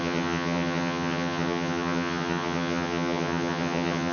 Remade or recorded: remade